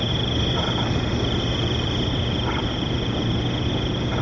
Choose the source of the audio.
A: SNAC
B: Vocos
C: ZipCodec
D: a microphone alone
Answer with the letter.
D